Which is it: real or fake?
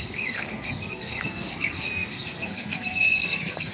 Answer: fake